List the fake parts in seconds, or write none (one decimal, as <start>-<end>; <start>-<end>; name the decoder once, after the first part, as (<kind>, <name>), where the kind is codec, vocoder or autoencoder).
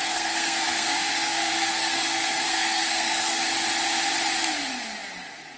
0.0-3.4 (codec, SNAC)